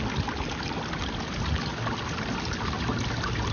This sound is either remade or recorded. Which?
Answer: recorded